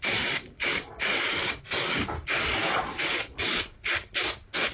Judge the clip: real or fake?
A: real